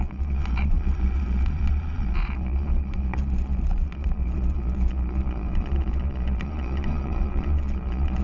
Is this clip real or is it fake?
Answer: fake